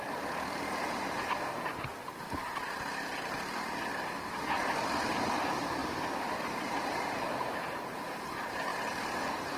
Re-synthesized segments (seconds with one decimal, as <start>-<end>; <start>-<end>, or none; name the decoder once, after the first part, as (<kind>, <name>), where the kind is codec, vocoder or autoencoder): none